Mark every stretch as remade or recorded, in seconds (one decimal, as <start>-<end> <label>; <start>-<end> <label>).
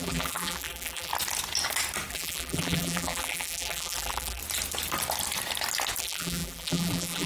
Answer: 0.0-1.1 remade; 1.1-2.1 recorded; 2.1-4.4 remade; 4.4-6.0 recorded; 6.0-7.3 remade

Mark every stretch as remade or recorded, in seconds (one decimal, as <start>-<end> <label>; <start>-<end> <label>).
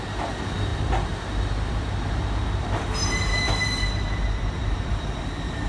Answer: 0.0-0.7 recorded; 0.7-3.8 remade; 3.8-4.6 recorded; 4.6-5.2 remade; 5.2-5.7 recorded